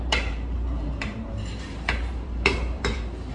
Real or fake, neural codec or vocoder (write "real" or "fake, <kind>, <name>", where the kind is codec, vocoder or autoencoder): fake, vocoder, BigVGAN v2